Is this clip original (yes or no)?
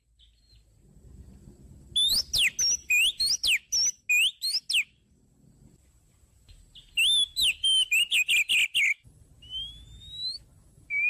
yes